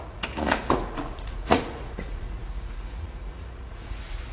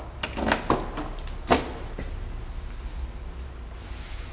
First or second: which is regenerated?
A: first